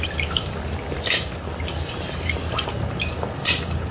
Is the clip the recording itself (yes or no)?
yes